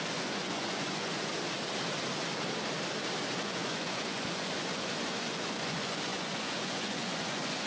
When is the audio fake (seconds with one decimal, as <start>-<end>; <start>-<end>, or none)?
0.0-1.3; 3.4-7.7